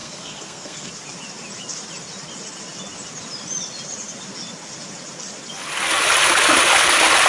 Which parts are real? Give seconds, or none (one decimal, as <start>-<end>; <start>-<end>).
0.9-7.3